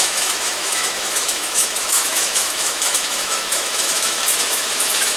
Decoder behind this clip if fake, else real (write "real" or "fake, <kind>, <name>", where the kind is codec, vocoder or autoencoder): fake, autoencoder, DAC-VAE